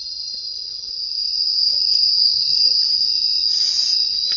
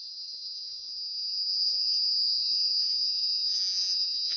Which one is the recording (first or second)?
first